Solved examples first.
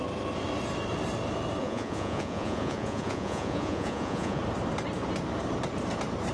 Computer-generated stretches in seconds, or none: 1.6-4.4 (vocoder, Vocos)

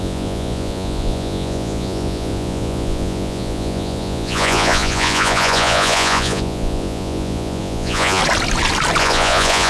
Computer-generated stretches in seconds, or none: 0.0-8.2 (vocoder, Vocos); 9.0-9.7

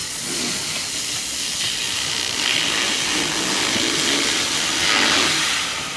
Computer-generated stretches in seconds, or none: 0.0-0.7 (vocoder, Vocos)